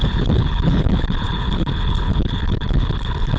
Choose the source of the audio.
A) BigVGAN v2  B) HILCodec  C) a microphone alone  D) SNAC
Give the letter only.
B